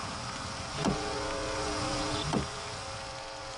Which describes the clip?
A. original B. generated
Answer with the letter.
B